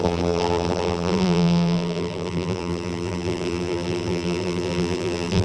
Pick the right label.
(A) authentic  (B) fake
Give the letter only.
B